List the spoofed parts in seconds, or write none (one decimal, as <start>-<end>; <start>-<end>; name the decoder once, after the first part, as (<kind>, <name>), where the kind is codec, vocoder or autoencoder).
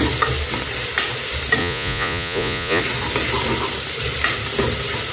1.6-2.8 (vocoder, Vocos)